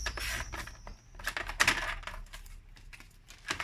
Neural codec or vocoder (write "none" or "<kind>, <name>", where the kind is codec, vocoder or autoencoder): none